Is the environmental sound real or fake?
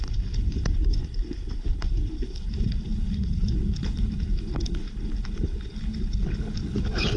fake